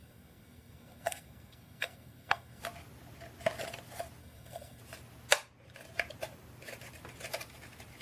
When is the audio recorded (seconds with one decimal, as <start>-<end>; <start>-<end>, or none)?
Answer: 2.6-4.2; 4.8-8.0